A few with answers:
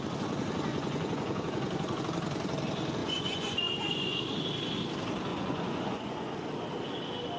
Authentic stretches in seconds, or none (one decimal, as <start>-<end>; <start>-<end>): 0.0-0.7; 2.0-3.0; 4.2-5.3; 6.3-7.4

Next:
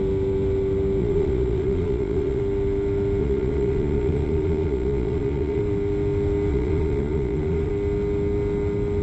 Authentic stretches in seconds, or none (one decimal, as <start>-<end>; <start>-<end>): 0.0-1.0; 2.4-3.2; 5.6-6.5; 7.7-9.0

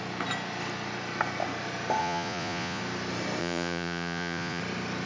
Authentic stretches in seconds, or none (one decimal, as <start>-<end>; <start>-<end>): 0.0-2.0; 2.8-3.4; 4.6-5.1

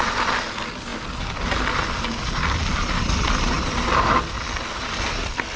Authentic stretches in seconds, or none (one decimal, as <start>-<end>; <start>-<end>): 0.0-5.6

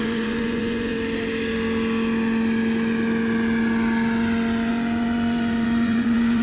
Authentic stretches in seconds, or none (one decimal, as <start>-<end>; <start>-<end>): 0.9-4.7

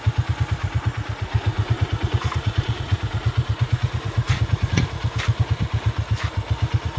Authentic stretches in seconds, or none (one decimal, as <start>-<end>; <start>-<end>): 0.0-0.6; 4.8-7.0